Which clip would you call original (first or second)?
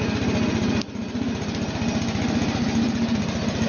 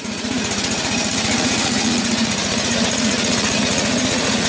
first